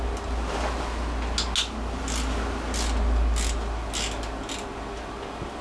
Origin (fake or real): real